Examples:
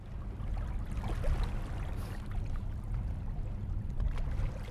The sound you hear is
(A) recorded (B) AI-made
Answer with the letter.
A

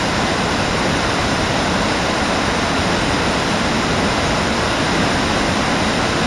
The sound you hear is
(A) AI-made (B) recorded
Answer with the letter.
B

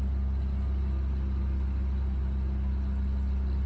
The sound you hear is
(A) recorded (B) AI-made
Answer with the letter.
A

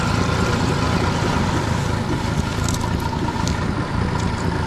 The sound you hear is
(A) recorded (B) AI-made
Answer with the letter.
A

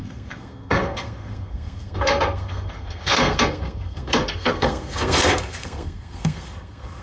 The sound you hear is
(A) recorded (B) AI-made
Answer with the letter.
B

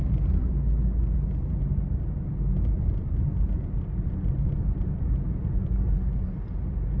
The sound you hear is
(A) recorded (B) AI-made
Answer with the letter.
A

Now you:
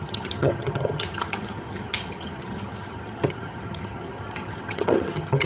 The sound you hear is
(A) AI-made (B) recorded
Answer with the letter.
A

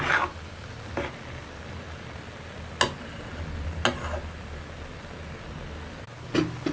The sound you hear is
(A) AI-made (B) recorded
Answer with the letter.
B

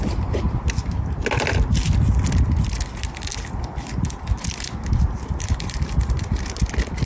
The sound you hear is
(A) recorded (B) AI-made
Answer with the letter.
A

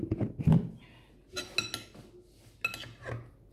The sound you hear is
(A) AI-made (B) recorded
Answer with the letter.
B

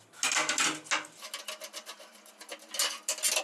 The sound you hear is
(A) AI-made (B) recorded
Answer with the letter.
B